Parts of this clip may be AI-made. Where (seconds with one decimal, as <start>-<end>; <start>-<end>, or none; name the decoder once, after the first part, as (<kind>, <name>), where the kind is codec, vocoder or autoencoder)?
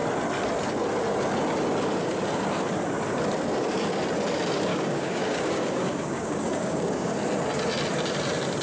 4.7-7.2 (codec, DAC)